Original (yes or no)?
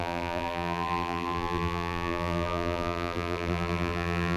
no